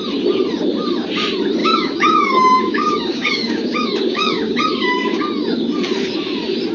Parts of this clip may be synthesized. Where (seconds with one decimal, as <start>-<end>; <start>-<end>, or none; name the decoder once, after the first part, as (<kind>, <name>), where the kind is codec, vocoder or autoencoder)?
1.6-5.2 (codec, DAC)